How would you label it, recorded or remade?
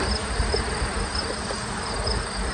recorded